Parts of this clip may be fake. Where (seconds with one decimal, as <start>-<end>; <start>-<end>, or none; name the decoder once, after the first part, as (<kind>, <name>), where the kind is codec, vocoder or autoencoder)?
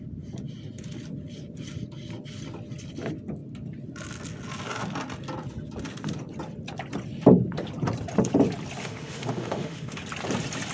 8.8-10.0 (autoencoder, DAC-VAE)